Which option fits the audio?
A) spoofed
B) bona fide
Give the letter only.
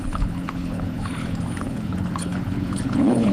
A